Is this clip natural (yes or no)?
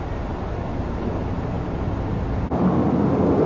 yes